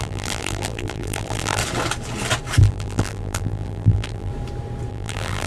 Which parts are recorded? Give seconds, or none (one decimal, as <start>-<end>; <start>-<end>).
1.6-2.6; 4.3-4.9